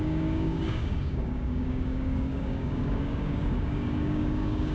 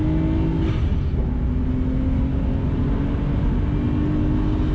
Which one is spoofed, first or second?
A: first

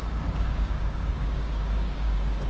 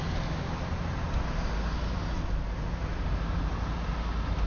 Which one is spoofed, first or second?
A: first